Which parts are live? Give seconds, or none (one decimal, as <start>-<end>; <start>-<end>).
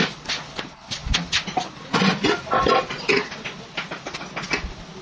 0.0-5.0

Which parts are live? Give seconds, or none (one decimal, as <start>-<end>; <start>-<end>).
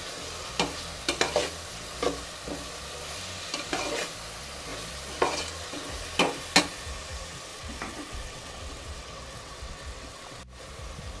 0.0-7.5; 10.4-11.2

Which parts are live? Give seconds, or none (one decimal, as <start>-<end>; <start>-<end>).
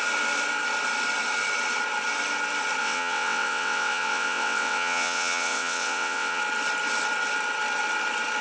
0.0-2.8; 6.4-8.4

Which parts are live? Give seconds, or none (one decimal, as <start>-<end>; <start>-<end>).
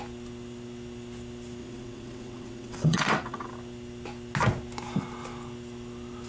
0.0-1.6; 3.5-6.3